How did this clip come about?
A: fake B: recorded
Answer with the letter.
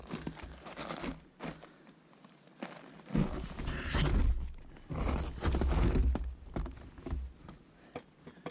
B